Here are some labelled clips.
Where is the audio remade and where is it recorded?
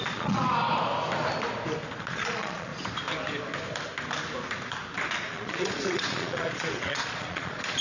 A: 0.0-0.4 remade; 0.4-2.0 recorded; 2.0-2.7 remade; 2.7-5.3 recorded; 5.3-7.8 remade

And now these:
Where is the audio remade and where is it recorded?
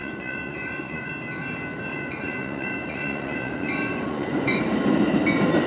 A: 0.0-1.1 remade; 1.1-1.9 recorded; 1.9-4.6 remade; 4.6-5.7 recorded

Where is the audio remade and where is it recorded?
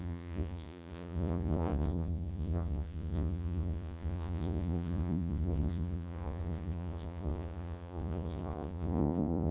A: 0.0-9.5 remade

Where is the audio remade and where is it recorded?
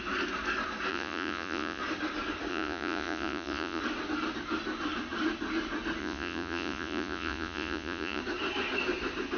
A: 0.0-0.9 recorded; 0.9-1.8 remade; 1.8-2.5 recorded; 2.5-3.8 remade; 3.8-6.0 recorded; 6.0-8.2 remade; 8.2-9.4 recorded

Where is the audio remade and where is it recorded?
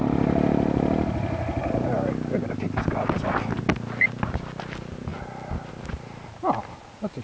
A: 0.0-7.2 recorded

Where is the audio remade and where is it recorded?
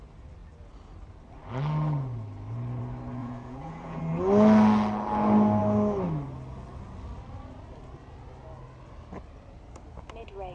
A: 0.0-3.2 recorded; 3.2-4.0 remade; 4.0-10.5 recorded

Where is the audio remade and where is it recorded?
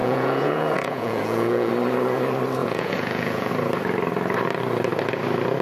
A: 0.0-1.7 remade; 1.7-2.6 recorded; 2.6-3.5 remade; 3.5-5.6 recorded